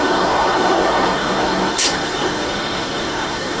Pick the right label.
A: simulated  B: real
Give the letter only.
A